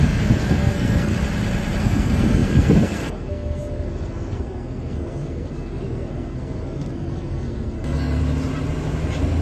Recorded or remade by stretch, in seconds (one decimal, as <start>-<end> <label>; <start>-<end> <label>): 0.0-1.1 remade; 1.1-1.8 recorded; 1.8-8.2 remade; 8.2-9.4 recorded